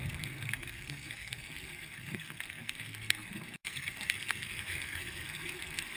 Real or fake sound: fake